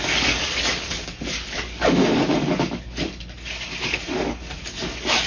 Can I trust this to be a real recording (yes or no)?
no